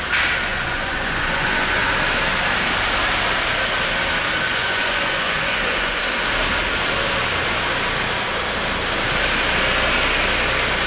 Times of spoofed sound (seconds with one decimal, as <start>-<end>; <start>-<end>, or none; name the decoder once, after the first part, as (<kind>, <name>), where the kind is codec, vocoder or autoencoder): 0.5-1.9 (vocoder, Vocos); 4.5-6.0